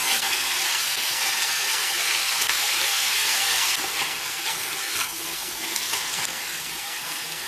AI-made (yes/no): yes